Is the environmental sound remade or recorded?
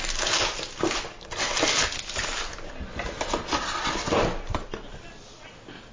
recorded